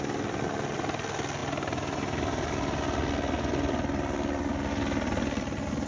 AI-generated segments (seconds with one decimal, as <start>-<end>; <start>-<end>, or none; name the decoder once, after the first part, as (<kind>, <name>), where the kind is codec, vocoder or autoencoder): none